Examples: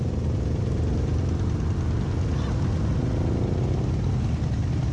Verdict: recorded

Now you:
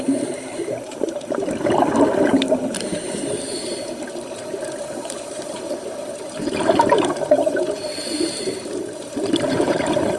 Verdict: remade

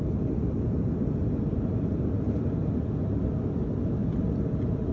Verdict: recorded